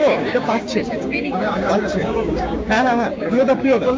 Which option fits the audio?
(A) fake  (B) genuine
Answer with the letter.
A